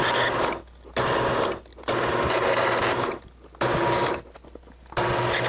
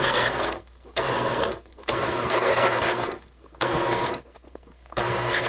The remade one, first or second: second